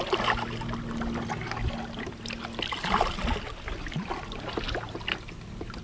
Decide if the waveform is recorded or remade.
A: recorded